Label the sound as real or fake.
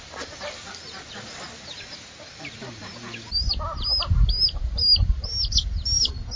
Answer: real